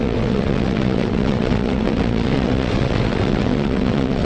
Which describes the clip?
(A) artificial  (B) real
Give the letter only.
A